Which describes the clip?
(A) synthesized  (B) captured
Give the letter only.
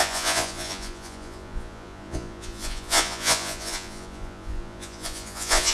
A